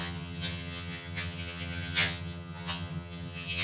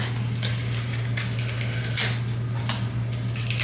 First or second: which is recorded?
second